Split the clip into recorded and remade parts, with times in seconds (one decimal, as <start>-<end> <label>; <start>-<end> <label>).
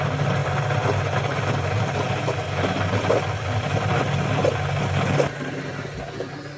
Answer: 0.0-6.6 recorded